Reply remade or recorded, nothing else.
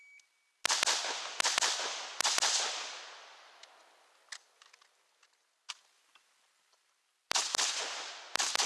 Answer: recorded